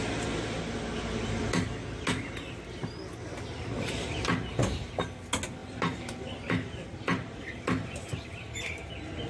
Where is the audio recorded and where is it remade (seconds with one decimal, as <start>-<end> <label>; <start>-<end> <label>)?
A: 0.0-5.6 recorded; 5.6-8.9 remade; 8.9-9.3 recorded